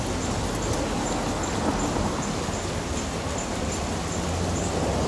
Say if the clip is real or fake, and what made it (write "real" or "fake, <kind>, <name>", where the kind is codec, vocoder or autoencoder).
real